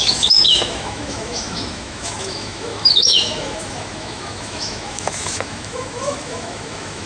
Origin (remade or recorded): remade